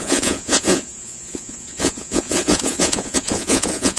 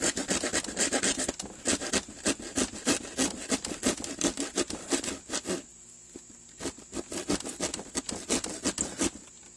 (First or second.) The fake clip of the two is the first